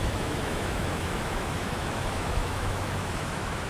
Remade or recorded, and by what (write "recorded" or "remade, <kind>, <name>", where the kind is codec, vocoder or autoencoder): remade, autoencoder, DAC-VAE